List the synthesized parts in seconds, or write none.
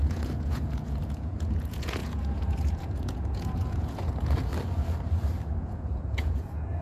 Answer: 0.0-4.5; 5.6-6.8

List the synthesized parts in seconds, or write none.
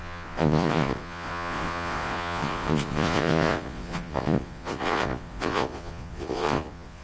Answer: 0.0-7.0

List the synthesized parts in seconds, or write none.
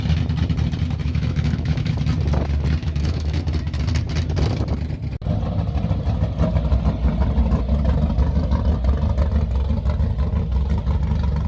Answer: 1.0-2.0; 2.8-3.4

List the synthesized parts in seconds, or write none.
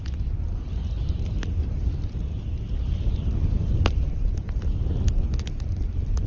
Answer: none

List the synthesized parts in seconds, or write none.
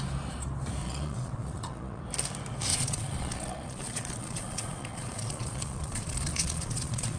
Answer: 0.8-2.0; 2.7-7.2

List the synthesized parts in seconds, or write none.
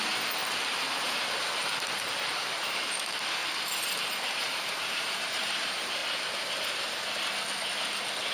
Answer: 0.0-0.4; 1.0-3.4; 4.1-6.0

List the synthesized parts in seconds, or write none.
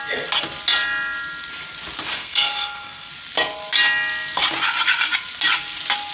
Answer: 2.1-3.1